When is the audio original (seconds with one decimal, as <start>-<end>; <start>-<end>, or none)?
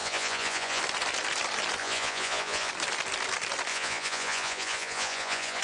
0.8-1.8; 2.7-3.7